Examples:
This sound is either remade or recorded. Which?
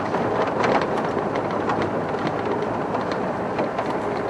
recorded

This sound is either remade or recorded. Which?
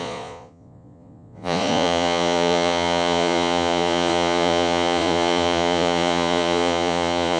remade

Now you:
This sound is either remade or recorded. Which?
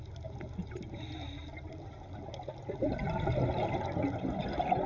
recorded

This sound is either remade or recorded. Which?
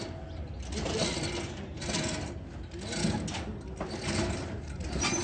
recorded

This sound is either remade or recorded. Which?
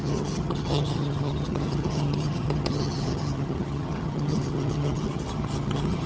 remade